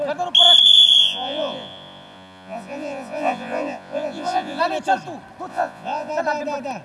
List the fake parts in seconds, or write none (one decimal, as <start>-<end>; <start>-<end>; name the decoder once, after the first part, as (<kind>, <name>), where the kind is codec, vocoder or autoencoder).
1.0-4.6 (vocoder, Vocos); 5.5-6.1